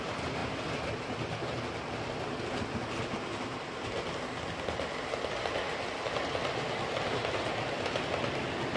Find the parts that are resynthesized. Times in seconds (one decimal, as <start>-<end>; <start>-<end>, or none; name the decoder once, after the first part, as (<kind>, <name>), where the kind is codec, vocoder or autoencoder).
none